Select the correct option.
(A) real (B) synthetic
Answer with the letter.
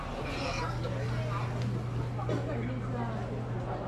A